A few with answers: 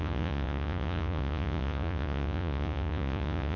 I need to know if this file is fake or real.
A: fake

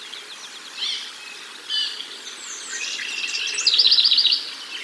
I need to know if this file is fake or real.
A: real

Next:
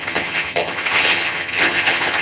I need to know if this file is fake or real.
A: fake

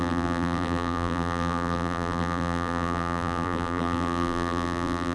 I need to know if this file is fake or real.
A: fake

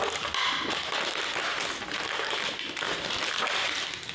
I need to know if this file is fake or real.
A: real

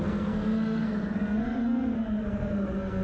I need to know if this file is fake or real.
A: fake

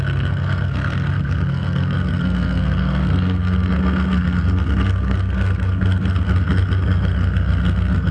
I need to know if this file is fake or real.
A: fake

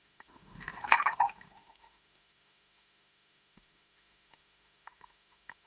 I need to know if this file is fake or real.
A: fake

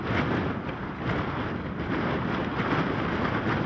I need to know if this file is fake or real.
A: real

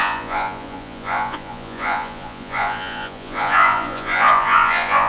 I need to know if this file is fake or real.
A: fake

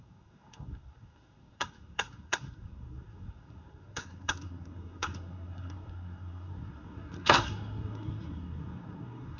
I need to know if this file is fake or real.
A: fake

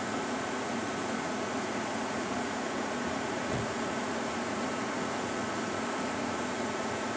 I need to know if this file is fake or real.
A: fake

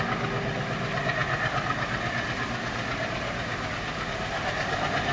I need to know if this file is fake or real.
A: real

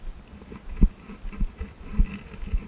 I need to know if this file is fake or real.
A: real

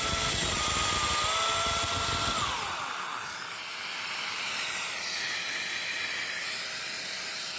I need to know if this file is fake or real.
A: real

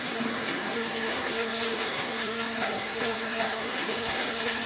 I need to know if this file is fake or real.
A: fake